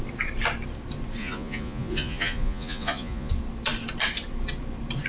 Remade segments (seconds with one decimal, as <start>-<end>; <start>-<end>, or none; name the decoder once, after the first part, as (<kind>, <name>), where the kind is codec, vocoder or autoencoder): 1.2-3.3 (vocoder, Vocos)

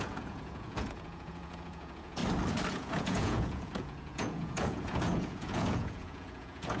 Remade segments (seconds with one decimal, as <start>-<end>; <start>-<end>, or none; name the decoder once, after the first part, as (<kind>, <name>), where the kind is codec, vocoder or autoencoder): 0.0-2.2 (vocoder, Vocos); 2.7-6.8